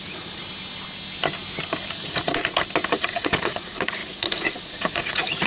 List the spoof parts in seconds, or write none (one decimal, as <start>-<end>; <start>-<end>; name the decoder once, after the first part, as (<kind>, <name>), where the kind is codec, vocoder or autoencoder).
0.0-0.4 (vocoder, Vocos); 1.9-2.4; 2.9-5.5